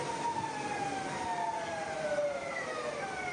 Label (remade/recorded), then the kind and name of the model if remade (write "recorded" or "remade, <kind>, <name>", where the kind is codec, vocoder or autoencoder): recorded